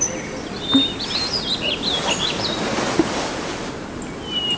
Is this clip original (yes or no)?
yes